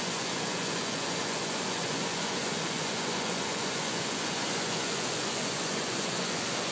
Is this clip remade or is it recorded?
remade